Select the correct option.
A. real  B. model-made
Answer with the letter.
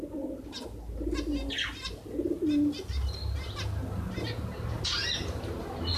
A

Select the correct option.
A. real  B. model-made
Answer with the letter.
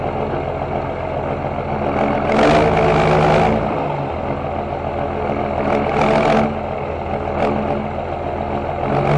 A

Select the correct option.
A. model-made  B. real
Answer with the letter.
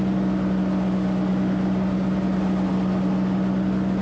B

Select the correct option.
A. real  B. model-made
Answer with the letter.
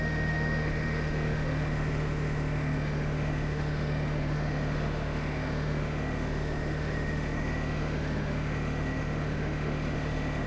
B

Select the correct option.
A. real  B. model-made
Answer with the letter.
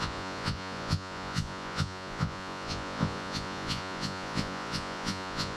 B